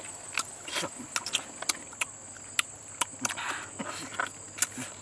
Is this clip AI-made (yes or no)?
no